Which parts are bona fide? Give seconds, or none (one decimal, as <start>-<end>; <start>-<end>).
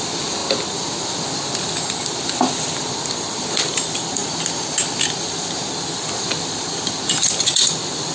4.2-5.0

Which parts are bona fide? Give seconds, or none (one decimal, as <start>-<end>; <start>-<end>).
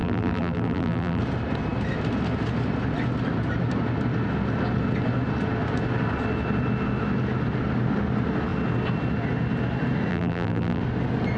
1.2-10.1; 10.8-11.4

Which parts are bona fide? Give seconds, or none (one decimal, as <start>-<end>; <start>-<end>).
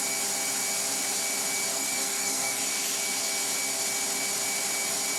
0.0-1.7; 2.7-5.2